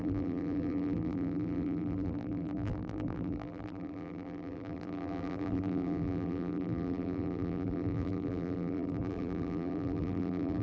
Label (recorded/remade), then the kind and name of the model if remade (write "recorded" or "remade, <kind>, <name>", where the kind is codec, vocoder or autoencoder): remade, vocoder, BigVGAN v2